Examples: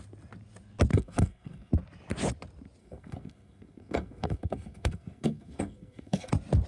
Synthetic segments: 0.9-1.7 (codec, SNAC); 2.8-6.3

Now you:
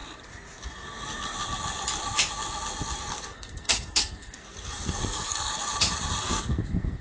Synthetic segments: 3.1-5.5 (codec, SNAC); 6.2-7.0

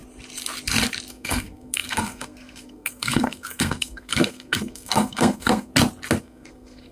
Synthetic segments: 1.1-5.7 (codec, SNAC); 6.2-6.9